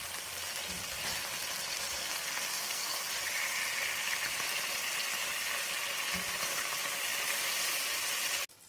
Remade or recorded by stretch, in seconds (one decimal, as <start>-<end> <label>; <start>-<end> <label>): 0.0-2.0 recorded; 2.0-3.1 remade; 3.1-8.7 recorded